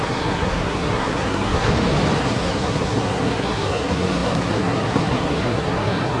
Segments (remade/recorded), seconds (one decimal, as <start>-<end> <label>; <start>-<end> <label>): 0.0-1.7 remade; 1.7-2.2 recorded; 2.2-6.2 remade